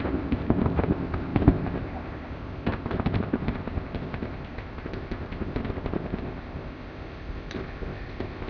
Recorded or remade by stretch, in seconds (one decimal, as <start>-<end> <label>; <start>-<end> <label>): 0.0-8.5 remade